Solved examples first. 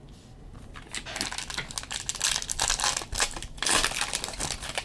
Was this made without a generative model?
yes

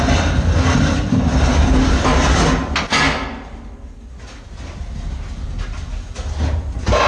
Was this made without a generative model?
yes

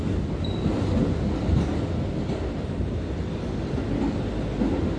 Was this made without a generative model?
yes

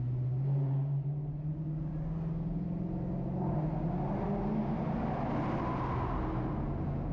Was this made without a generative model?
yes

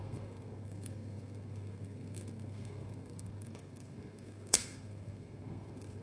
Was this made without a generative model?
no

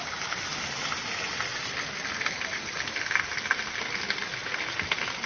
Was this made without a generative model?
yes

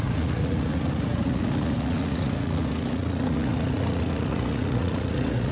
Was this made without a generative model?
no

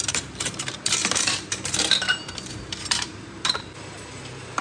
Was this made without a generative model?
no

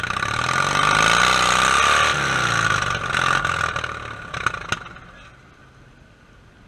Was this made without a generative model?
yes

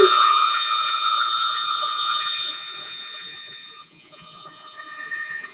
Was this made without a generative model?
no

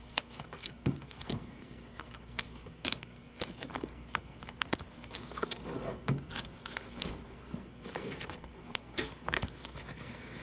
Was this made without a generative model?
no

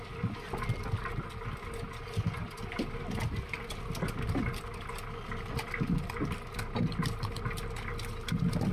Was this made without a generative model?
yes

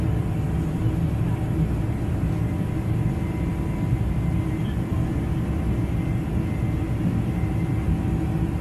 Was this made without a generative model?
yes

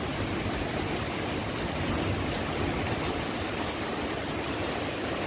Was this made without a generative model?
no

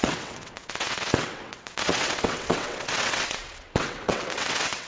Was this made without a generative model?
no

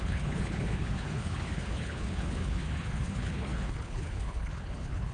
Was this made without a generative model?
no